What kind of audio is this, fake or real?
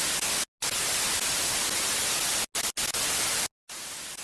real